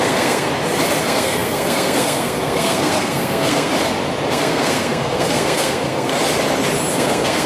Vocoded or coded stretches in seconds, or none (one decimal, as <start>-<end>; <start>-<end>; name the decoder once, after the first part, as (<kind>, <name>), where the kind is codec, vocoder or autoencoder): 0.0-0.5 (codec, SNAC); 1.0-3.7; 4.3-6.1; 6.9-7.5